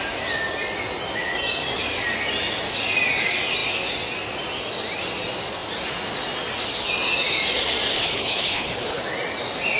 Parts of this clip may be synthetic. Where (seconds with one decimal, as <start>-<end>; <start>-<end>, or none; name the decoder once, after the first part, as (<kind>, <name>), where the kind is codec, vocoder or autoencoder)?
7.9-9.0 (codec, HILCodec)